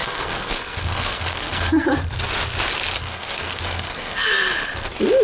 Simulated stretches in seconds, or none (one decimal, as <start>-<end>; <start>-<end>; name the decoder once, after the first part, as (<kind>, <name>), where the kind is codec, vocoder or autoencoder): 0.0-1.9 (codec, SNAC); 3.0-4.5